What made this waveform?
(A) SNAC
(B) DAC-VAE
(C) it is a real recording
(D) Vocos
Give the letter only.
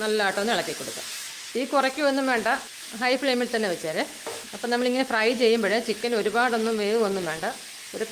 B